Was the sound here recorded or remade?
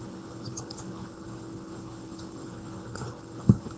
remade